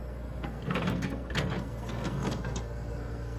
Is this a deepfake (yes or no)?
yes